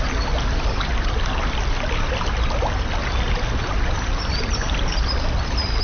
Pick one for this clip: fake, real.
real